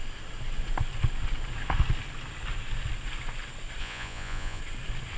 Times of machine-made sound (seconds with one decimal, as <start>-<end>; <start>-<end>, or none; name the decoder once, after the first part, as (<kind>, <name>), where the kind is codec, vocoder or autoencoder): 3.8-4.6 (vocoder, Vocos)